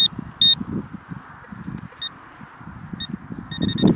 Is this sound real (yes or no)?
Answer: yes